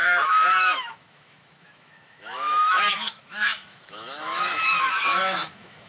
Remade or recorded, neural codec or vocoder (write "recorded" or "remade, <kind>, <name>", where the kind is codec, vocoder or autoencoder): remade, autoencoder, DAC-VAE